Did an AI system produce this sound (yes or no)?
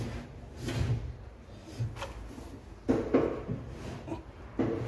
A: no